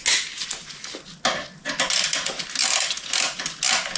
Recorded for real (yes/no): yes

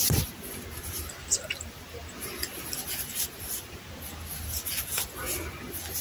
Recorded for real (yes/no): yes